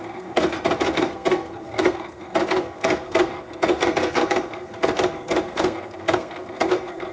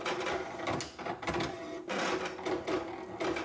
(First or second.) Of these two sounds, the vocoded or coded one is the first